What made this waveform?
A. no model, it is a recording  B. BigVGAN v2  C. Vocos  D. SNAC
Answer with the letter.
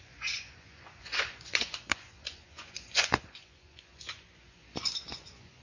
C